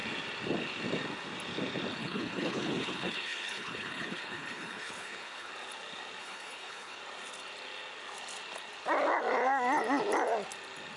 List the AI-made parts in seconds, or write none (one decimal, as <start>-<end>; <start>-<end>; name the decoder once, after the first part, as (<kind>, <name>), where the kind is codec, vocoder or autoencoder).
2.0-5.5 (codec, HILCodec); 6.2-7.0